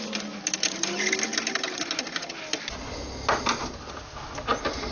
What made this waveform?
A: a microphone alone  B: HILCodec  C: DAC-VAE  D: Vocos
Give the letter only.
A